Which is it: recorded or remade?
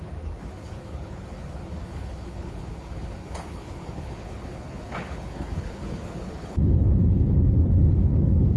remade